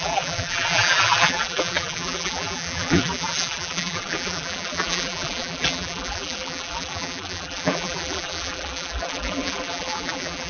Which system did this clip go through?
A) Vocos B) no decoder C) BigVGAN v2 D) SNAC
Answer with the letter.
C